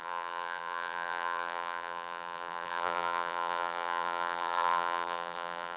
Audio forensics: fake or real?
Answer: fake